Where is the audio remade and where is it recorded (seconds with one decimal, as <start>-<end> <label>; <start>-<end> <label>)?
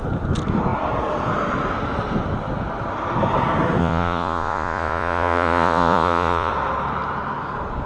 0.0-3.8 recorded; 3.8-6.5 remade; 6.5-7.9 recorded